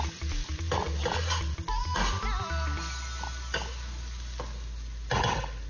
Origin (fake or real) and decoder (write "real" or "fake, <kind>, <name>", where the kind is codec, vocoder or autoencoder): real